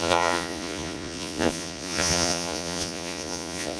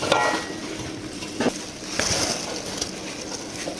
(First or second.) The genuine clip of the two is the second